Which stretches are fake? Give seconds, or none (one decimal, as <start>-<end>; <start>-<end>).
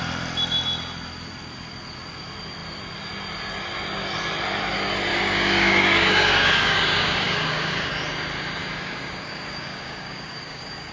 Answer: 5.1-7.9; 8.6-10.9